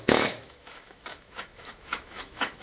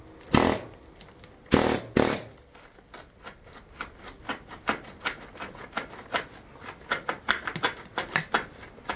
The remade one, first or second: first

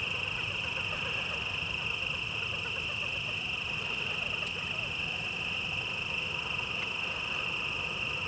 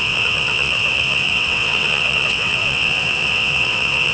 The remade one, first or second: second